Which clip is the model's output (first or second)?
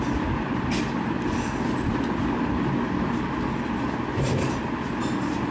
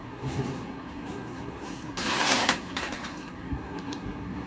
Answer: second